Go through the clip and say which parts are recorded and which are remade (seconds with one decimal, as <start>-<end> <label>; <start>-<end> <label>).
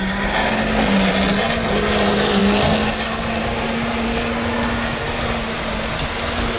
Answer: 0.0-6.6 recorded